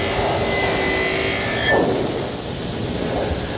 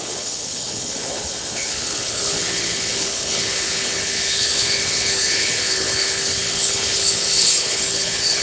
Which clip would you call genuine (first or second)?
first